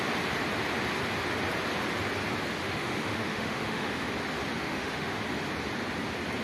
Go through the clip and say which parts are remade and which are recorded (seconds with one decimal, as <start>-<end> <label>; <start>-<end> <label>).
0.0-2.6 recorded; 2.6-4.1 remade; 4.1-4.6 recorded; 4.6-5.2 remade; 5.2-6.4 recorded